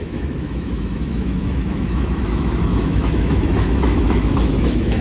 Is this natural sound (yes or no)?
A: no